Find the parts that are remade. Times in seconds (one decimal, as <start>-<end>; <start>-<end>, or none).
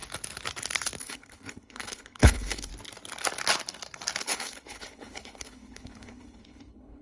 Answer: 1.0-2.7; 4.2-7.0